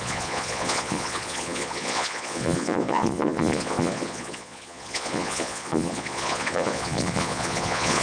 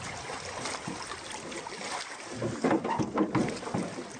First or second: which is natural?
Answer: second